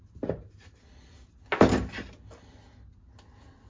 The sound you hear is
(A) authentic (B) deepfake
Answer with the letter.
A